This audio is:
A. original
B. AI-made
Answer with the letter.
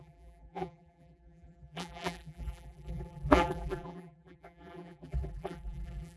B